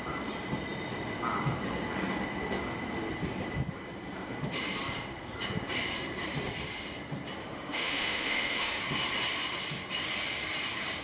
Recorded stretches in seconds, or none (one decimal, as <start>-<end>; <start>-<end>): 0.0-7.4; 8.8-11.0